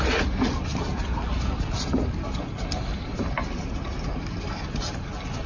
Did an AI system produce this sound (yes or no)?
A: no